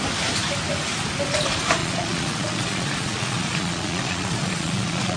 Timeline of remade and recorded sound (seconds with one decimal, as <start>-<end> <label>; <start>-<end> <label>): 0.0-1.8 recorded; 1.8-5.2 remade